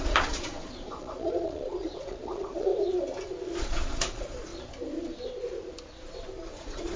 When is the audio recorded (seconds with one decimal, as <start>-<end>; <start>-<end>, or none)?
2.7-3.6; 4.5-6.6

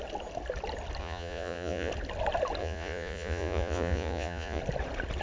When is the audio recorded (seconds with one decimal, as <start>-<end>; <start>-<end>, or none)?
0.0-1.0; 1.9-2.6; 4.6-5.2

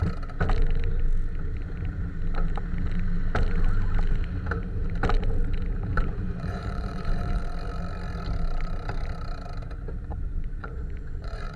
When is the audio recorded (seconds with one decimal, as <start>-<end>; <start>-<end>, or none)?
0.0-5.9; 7.4-10.1

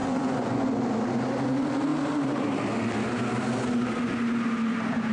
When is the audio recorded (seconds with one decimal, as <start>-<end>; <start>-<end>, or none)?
0.7-5.1

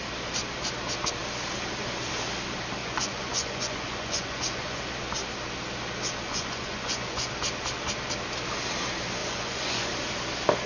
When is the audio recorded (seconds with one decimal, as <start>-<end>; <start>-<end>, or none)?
0.0-2.8; 4.8-6.3; 7.3-9.2; 9.9-10.7

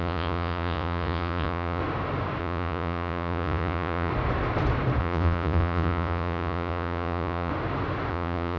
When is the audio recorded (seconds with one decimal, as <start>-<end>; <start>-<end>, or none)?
1.8-2.4; 4.1-5.0; 7.5-8.1

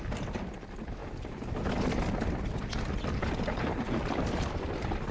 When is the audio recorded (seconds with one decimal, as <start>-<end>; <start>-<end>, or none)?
0.0-5.1